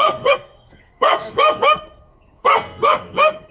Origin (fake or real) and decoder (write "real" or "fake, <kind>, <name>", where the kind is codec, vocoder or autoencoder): fake, codec, SNAC